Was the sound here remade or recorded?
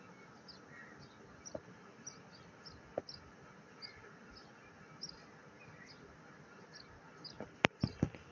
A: recorded